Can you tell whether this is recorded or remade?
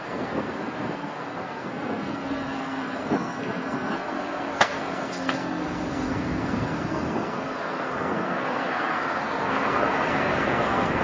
remade